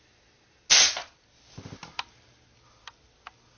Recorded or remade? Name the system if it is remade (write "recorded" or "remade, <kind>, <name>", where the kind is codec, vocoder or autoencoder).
recorded